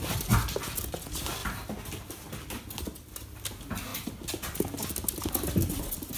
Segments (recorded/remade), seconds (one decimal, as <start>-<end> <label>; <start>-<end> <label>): 0.0-6.2 recorded